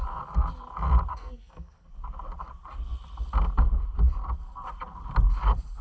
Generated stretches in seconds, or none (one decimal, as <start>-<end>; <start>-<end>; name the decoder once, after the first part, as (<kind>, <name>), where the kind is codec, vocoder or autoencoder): 1.1-1.9 (codec, SNAC)